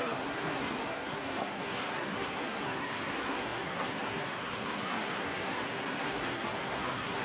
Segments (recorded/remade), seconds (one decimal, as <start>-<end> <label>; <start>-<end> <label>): 0.0-7.2 remade